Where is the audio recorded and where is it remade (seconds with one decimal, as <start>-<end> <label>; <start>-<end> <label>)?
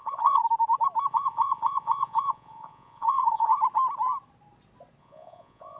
0.0-0.4 remade; 0.4-1.1 recorded; 1.1-3.5 remade; 3.5-5.0 recorded; 5.0-5.8 remade